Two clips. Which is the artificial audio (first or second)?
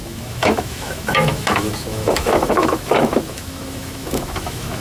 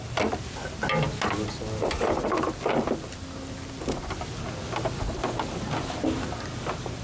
first